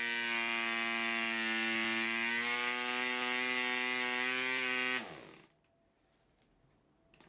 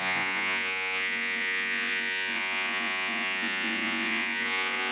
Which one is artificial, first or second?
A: second